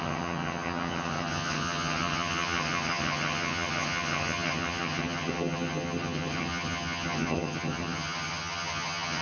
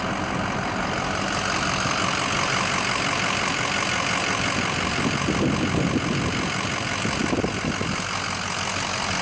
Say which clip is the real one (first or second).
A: second